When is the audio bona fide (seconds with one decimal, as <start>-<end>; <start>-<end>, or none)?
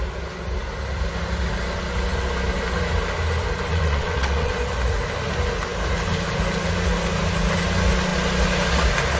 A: 0.0-3.7; 4.5-9.2